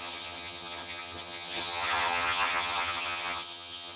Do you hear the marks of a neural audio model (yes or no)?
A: yes